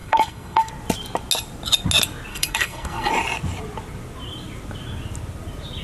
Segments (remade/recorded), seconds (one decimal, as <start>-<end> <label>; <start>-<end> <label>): 0.0-0.7 remade; 0.7-2.3 recorded; 2.3-3.1 remade; 3.1-5.8 recorded